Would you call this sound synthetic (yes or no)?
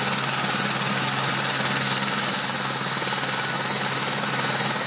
no